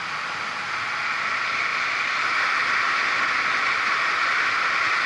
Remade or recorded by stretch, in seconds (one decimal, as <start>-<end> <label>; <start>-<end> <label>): 0.0-5.1 recorded